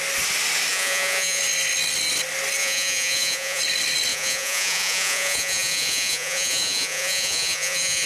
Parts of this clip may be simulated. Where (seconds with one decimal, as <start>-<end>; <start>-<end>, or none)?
0.7-1.4; 2.6-3.6; 4.1-8.1